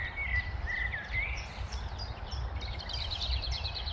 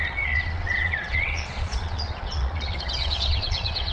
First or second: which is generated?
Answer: second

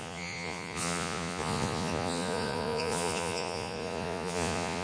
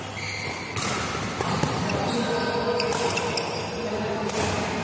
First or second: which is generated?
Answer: first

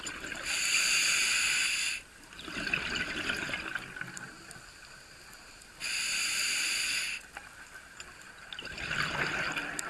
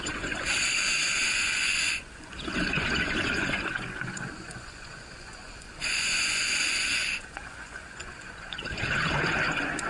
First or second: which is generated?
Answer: second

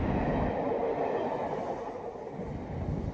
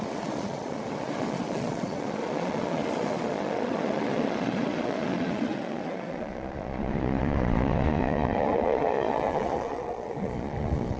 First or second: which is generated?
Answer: second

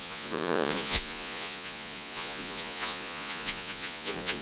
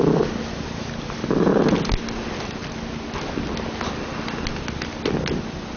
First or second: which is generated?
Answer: first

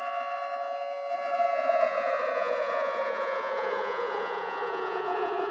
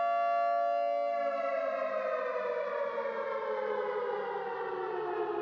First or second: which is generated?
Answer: first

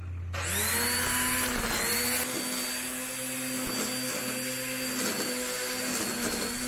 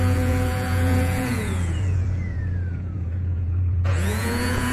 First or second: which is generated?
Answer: second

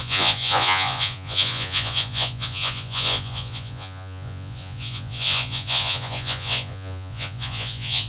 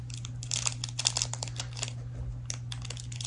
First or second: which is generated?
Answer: first